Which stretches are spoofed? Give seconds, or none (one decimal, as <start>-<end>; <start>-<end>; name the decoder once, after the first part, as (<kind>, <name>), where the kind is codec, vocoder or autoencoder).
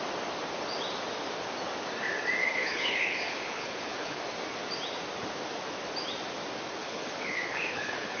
2.4-4.2 (codec, HILCodec); 6.8-8.2